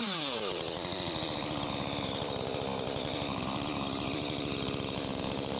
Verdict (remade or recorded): remade